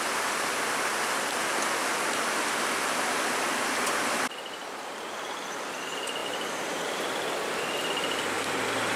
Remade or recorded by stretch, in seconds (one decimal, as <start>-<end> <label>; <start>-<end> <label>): 0.0-4.6 recorded; 4.6-5.4 remade; 5.4-6.2 recorded; 6.2-7.6 remade; 7.6-9.0 recorded